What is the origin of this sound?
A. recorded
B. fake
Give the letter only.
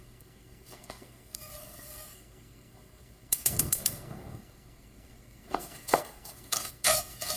B